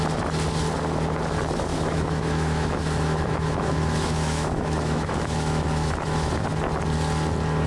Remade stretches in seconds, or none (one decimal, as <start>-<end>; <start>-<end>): 1.7-6.3